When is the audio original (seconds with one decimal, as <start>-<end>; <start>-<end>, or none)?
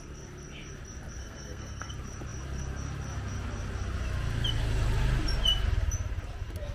0.0-1.2; 1.9-6.7